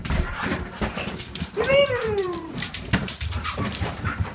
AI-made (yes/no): yes